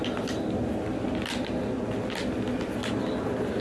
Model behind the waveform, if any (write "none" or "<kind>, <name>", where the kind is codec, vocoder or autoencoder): none